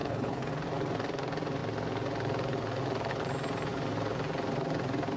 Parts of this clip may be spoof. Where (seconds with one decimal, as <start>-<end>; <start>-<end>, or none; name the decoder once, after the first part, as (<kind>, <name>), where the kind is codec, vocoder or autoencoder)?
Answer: 0.0-0.5 (codec, HILCodec)